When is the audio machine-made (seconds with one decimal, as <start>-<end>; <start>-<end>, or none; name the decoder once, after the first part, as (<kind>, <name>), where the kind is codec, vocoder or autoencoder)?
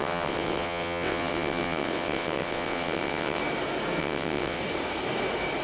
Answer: 0.0-3.4 (vocoder, WaveNeXt); 4.0-4.6